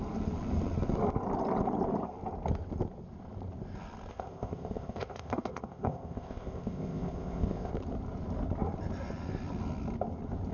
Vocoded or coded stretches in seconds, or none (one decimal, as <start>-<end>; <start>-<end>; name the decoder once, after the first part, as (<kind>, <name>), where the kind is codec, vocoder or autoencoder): 4.1-7.7 (codec, ZipCodec)